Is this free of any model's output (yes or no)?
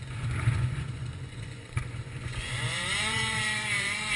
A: no